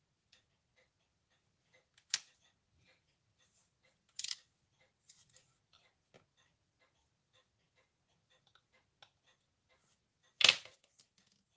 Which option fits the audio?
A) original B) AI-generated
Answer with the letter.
A